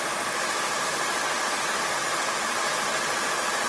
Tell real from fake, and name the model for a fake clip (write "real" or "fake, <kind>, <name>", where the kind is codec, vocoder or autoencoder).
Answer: real